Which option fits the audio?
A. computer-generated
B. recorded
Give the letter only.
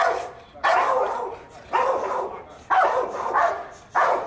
B